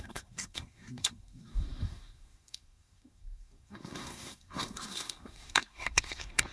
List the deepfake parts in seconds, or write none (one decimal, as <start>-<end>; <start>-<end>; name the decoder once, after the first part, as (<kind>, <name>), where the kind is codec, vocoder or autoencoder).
0.0-6.5 (codec, SNAC)